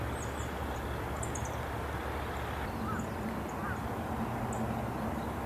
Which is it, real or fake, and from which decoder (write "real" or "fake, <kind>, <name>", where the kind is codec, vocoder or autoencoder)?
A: real